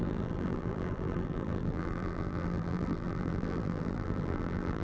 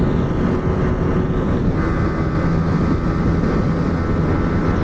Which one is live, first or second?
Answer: second